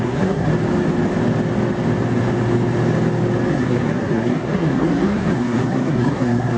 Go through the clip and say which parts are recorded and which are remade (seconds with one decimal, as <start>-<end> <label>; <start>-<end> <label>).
0.0-0.5 remade; 0.5-3.5 recorded; 3.5-6.6 remade